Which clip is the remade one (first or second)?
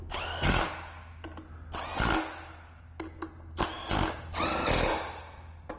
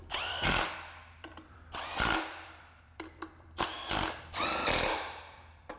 second